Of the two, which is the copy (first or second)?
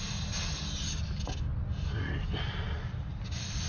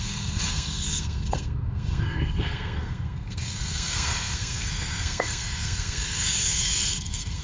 second